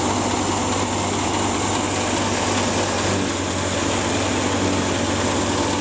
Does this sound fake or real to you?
real